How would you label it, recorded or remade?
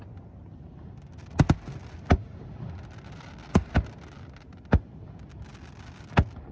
recorded